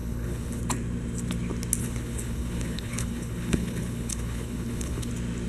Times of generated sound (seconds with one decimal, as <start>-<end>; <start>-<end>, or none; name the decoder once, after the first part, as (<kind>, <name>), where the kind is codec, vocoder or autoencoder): 0.0-0.6 (codec, HILCodec); 1.8-5.1